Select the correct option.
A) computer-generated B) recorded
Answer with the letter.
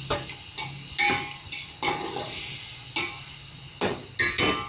B